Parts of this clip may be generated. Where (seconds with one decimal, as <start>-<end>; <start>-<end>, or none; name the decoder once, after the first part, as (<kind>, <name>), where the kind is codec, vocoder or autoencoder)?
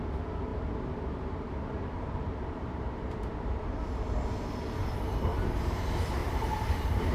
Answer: 0.5-3.8 (vocoder, BigVGAN v2); 5.3-5.8; 6.2-7.1